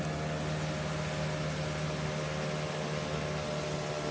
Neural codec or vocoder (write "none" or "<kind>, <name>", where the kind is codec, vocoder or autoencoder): none